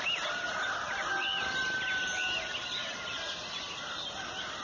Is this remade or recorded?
recorded